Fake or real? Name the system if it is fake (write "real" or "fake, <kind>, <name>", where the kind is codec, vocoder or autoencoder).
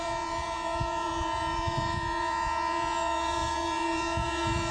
fake, vocoder, Vocos